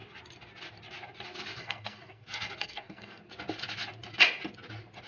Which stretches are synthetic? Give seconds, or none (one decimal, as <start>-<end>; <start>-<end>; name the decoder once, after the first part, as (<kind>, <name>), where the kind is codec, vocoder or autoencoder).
1.6-3.2 (codec, SNAC)